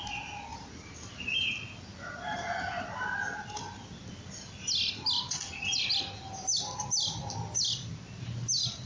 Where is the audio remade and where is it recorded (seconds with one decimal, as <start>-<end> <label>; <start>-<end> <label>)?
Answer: 0.0-0.5 recorded; 0.5-1.5 remade; 1.5-8.9 recorded